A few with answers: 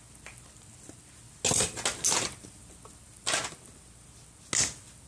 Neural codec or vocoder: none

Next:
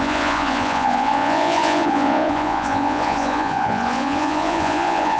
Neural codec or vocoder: vocoder, Vocos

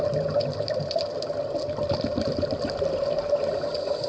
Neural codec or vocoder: none